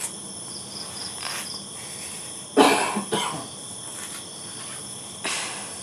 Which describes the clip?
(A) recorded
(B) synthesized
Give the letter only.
A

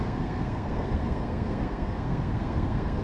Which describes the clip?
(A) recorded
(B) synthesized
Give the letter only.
B